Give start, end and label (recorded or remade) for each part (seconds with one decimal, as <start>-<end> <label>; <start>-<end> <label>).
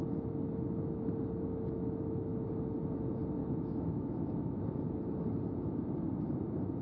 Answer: 0.0-3.4 recorded; 3.4-4.6 remade; 4.6-6.8 recorded